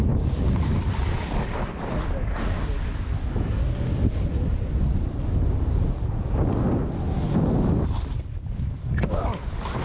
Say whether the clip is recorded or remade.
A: recorded